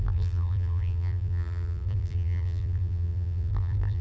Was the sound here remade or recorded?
remade